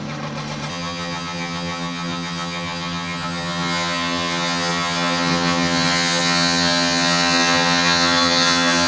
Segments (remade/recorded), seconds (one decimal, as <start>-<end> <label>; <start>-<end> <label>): 0.0-0.7 recorded; 0.7-8.9 remade